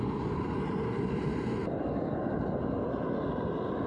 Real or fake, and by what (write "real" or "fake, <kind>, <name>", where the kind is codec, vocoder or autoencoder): real